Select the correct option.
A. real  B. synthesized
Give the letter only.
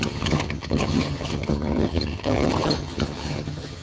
B